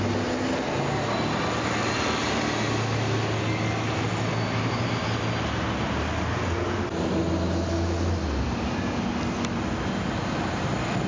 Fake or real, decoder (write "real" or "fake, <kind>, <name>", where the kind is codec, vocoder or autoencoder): real